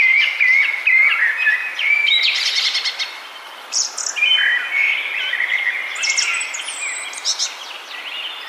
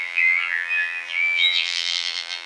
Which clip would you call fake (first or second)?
second